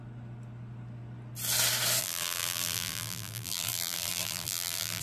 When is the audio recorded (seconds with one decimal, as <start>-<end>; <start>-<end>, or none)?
0.0-2.0

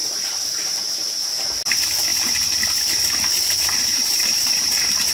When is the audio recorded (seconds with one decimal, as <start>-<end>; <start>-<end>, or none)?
0.8-2.1

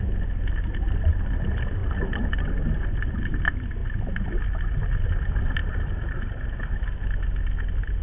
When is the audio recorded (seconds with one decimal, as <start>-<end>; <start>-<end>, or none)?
0.0-8.0

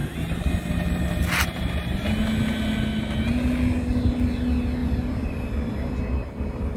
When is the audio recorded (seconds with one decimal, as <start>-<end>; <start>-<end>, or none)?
0.0-4.8; 5.5-6.8

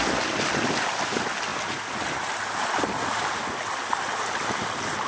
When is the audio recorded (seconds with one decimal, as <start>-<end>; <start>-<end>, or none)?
0.0-5.1

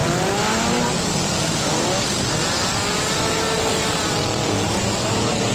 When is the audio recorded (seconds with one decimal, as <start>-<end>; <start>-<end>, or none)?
0.0-5.5